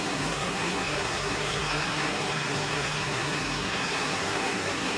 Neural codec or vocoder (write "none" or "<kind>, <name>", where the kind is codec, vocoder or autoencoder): codec, SNAC